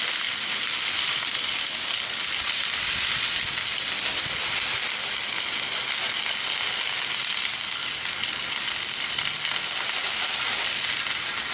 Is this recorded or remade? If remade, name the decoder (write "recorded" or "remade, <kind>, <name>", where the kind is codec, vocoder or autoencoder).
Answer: recorded